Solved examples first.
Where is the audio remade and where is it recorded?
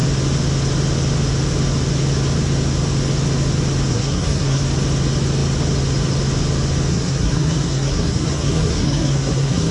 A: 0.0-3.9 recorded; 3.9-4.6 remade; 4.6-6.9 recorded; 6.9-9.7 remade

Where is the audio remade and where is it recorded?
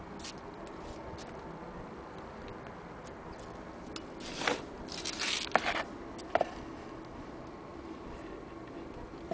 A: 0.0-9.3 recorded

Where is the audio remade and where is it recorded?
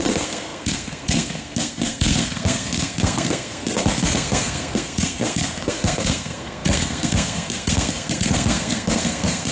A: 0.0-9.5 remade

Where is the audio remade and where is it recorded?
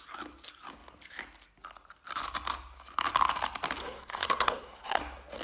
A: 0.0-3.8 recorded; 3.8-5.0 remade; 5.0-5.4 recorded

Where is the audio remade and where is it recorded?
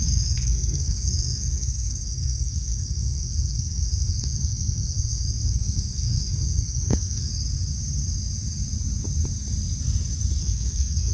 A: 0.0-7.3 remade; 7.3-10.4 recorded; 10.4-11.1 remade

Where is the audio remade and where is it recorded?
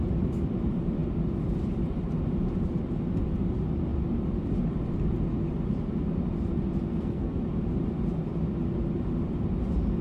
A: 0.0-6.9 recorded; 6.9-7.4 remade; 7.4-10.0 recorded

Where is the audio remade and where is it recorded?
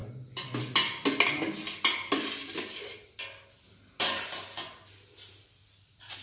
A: 0.0-6.2 recorded